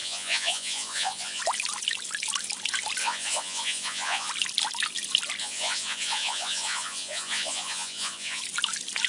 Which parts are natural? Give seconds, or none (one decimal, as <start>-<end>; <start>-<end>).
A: 1.4-3.0; 4.3-5.4; 8.4-9.1